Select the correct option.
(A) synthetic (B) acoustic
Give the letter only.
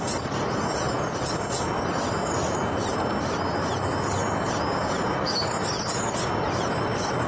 B